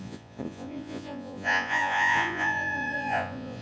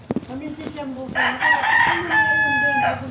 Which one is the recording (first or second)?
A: second